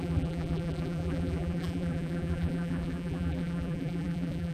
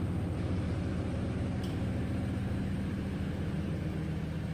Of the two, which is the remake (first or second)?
first